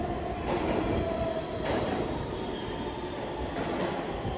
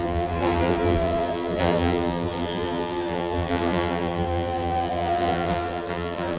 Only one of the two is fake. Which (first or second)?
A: second